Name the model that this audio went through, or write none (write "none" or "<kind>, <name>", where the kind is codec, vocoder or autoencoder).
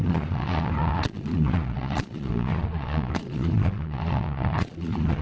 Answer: vocoder, Vocos